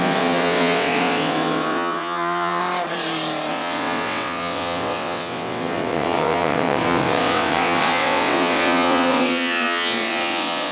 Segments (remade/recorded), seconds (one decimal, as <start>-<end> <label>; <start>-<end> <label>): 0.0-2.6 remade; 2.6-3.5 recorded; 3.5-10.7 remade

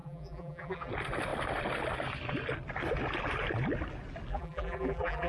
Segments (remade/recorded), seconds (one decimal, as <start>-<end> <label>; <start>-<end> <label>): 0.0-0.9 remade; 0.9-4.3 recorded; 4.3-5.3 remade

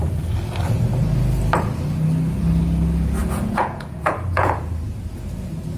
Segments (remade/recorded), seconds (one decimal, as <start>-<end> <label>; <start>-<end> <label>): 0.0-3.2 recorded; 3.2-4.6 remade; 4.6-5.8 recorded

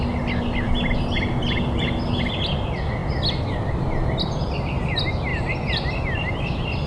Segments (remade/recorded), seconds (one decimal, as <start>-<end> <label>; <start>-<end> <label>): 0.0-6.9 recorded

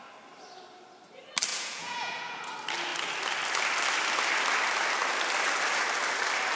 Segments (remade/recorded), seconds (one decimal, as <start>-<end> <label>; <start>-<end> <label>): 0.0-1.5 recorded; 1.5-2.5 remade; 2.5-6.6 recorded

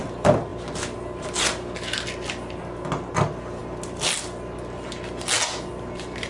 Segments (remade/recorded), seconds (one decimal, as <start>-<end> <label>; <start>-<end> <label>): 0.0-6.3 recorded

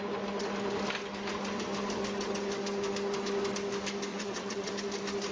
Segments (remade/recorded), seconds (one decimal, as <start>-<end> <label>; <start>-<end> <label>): 0.0-4.1 recorded; 4.1-4.7 remade; 4.7-5.3 recorded